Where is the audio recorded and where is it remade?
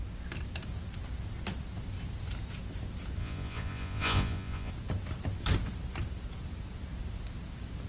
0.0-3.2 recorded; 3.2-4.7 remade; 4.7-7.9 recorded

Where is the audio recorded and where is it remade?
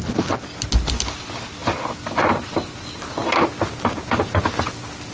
0.0-5.1 recorded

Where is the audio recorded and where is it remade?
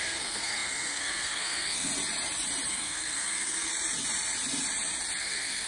0.0-1.9 remade; 1.9-2.7 recorded; 2.7-3.7 remade; 3.7-5.2 recorded; 5.2-5.7 remade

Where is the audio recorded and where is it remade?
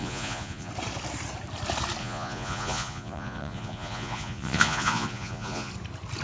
0.0-0.7 remade; 0.7-2.0 recorded; 2.0-5.7 remade; 5.7-6.2 recorded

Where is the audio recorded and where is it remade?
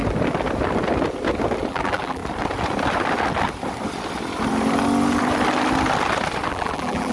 0.0-1.7 recorded; 1.7-2.2 remade; 2.2-6.5 recorded; 6.5-7.1 remade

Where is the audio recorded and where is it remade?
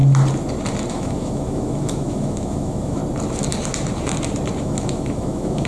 0.0-0.9 recorded; 0.9-3.0 remade; 3.0-4.6 recorded; 4.6-5.7 remade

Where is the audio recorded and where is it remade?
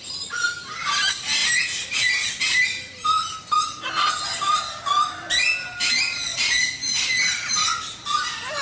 0.0-8.6 recorded